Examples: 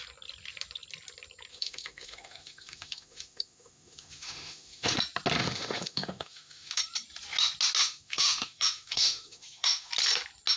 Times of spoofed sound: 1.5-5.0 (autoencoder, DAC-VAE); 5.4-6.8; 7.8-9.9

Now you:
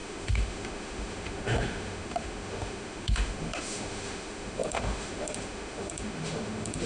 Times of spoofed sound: 0.0-6.9 (autoencoder, DAC-VAE)

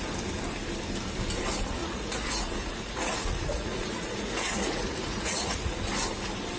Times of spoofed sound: 1.8-5.8 (vocoder, Vocos)

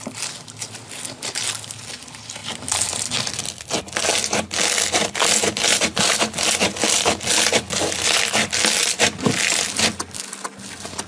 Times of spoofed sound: none

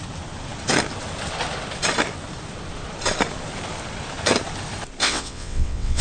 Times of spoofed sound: 5.0-6.0 (vocoder, WaveNeXt)

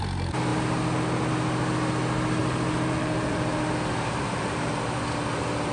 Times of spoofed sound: 2.4-4.7 (vocoder, BigVGAN v2)

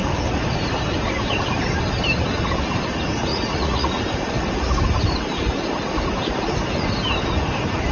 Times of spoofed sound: 3.3-4.0 (vocoder, Vocos)

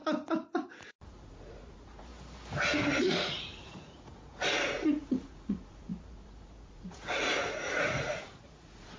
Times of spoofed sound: 0.5-2.1 (vocoder, Vocos); 3.0-9.0